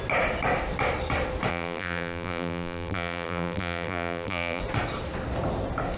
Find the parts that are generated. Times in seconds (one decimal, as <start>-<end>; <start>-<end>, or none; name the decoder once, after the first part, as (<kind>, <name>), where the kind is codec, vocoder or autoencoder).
1.5-4.6 (vocoder, BigVGAN v2)